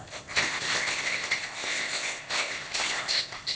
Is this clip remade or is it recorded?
remade